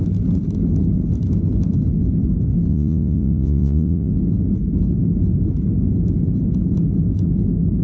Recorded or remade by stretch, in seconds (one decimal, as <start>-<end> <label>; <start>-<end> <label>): 0.0-2.7 recorded; 2.7-4.1 remade; 4.1-7.8 recorded